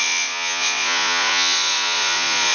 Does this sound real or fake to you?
fake